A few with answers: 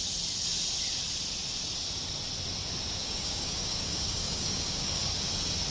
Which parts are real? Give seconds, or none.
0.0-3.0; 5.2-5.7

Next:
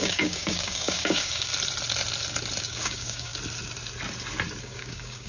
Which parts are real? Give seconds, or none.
1.5-2.6; 3.3-4.6

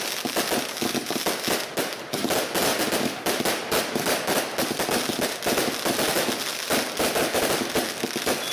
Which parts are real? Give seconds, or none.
0.0-8.5

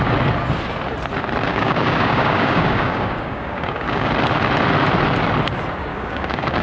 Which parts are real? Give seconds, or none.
0.0-1.5; 4.1-5.9

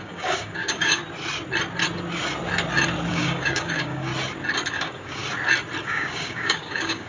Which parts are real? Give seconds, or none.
1.0-3.1; 4.1-4.7; 5.2-5.8

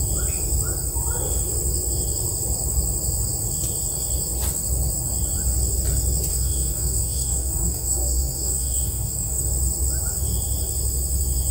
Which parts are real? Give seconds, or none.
0.0-6.3; 9.4-11.5

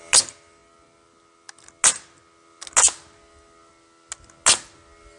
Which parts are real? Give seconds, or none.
0.0-5.2

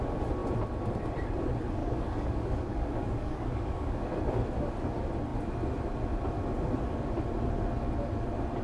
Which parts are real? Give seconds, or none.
0.0-1.8; 4.3-8.6